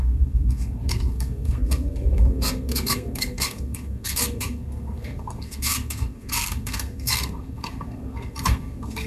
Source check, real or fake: fake